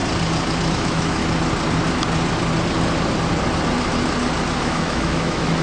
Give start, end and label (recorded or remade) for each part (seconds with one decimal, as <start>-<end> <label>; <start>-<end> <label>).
0.0-0.7 recorded; 0.7-1.2 remade; 1.2-4.6 recorded; 4.6-5.6 remade